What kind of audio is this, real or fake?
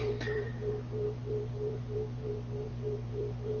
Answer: fake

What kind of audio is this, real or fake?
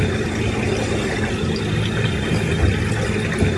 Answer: real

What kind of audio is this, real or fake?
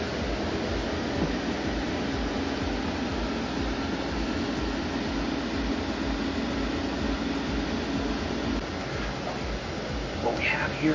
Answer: real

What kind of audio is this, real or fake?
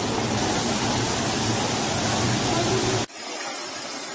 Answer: real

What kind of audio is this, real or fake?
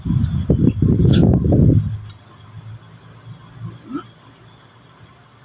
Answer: real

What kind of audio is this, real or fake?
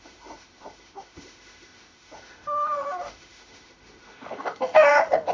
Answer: fake